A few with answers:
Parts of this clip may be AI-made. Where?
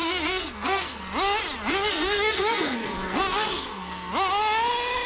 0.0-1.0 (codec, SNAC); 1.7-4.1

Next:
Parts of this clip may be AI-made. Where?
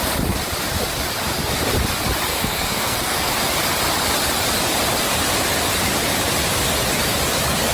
2.3-3.3 (codec, SNAC)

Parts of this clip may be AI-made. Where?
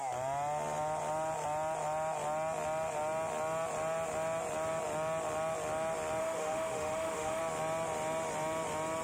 6.2-7.4 (autoencoder, DAC-VAE)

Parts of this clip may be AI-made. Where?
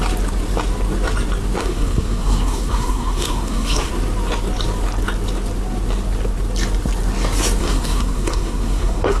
1.6-3.9 (codec, SNAC); 7.6-9.2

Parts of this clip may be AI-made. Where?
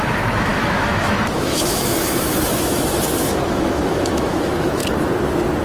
0.0-4.8 (autoencoder, DAC-VAE)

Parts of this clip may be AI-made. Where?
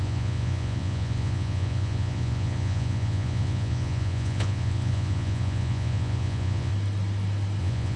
0.0-6.7 (vocoder, Vocos); 7.6-8.0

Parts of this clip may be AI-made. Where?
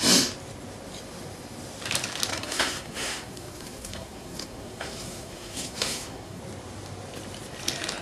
2.3-6.4 (codec, SNAC)